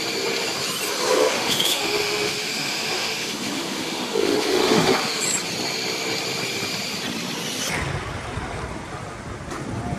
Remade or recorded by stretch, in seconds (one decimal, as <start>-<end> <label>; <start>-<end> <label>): 0.0-1.1 recorded; 1.1-5.2 remade; 5.2-10.0 recorded